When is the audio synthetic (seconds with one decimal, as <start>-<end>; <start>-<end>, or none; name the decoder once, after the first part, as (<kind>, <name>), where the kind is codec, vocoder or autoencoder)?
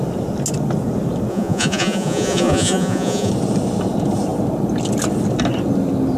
1.3-3.3 (vocoder, Vocos)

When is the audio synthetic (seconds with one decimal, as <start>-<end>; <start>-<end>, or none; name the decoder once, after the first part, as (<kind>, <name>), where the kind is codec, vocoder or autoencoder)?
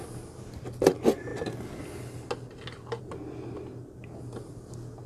none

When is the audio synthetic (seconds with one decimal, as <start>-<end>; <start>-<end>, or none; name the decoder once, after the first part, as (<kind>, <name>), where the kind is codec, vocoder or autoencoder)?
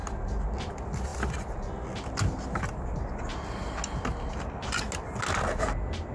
none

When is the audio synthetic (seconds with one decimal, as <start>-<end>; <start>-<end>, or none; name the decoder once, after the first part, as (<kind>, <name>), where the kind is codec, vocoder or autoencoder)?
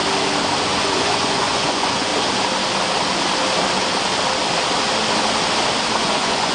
0.6-2.1 (vocoder, Vocos); 6.0-6.5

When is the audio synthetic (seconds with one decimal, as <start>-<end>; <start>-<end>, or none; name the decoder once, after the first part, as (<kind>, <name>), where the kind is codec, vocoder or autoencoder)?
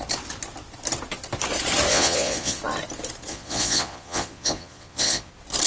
1.9-2.6 (vocoder, Vocos); 3.3-5.3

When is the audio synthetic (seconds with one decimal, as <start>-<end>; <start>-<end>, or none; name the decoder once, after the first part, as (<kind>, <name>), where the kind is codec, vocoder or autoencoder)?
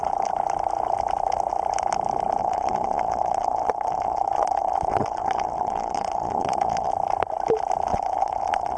2.4-6.9 (vocoder, Vocos); 7.9-8.8